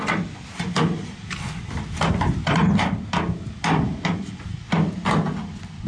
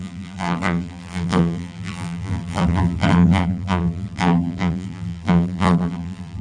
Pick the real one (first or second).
first